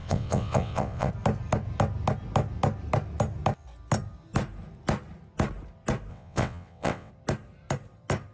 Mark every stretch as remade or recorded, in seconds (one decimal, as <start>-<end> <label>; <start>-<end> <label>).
0.0-1.1 remade; 1.1-6.1 recorded; 6.1-7.1 remade; 7.1-8.3 recorded